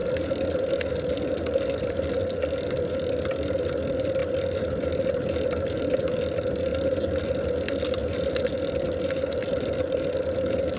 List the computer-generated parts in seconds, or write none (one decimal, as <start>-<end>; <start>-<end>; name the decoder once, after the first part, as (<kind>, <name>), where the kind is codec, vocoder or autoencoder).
none